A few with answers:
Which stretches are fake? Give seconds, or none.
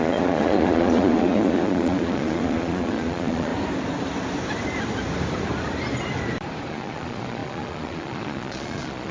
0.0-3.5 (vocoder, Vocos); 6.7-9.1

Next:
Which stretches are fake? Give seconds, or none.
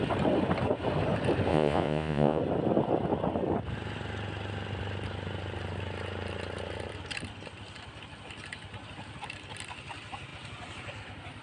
1.5-2.4 (vocoder, Vocos)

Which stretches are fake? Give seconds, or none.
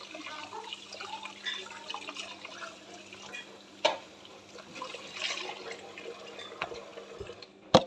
none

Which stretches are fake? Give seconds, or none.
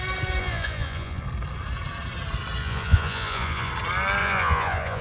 0.4-1.2 (vocoder, Vocos); 2.6-3.7; 4.2-5.0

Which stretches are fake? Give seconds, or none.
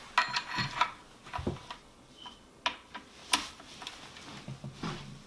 none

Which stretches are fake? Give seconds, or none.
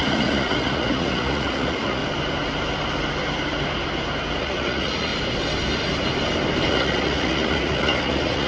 0.0-2.0 (vocoder, Vocos); 4.4-5.1; 6.7-8.5